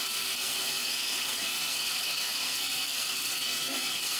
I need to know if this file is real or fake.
fake